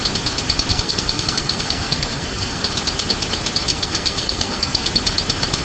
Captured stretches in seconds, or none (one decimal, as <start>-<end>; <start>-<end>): 0.0-0.7; 2.7-3.7; 4.9-5.6